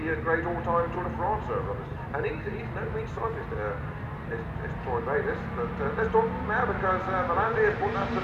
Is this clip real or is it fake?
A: real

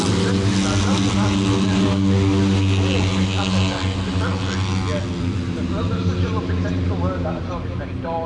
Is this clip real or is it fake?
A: real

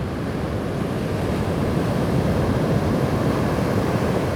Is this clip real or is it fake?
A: fake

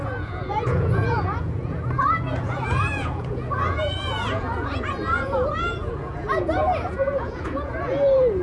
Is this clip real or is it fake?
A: fake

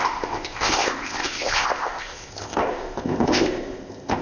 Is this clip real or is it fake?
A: fake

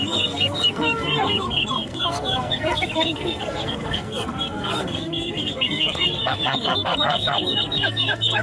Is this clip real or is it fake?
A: fake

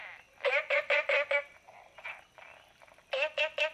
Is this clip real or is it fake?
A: real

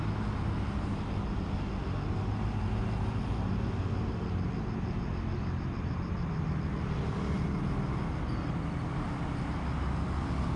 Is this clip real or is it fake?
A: real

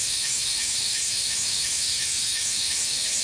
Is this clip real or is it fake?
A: fake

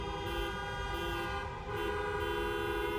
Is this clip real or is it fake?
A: real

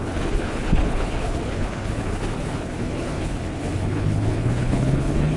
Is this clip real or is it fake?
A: fake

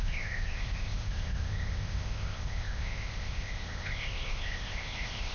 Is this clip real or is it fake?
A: fake